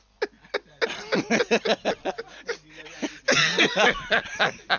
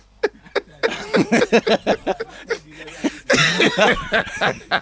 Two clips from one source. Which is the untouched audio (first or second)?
first